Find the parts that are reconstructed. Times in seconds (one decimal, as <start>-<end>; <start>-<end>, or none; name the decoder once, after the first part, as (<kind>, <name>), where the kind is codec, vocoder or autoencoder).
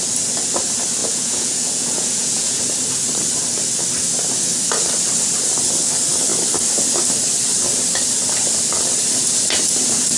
1.0-2.6 (vocoder, Vocos)